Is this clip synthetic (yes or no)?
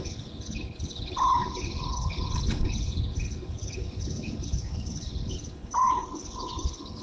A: yes